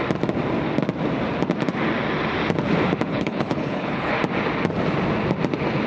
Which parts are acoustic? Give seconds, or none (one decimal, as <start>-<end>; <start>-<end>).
0.0-3.1; 4.1-5.9